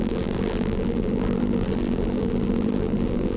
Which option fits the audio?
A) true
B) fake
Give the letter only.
B